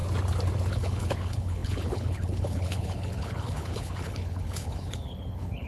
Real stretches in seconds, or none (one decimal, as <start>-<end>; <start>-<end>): 0.0-0.7